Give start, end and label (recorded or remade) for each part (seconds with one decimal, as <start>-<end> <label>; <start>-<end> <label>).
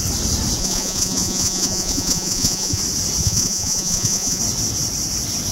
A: 0.0-0.6 recorded; 0.6-2.8 remade; 2.8-3.2 recorded; 3.2-4.4 remade; 4.4-5.5 recorded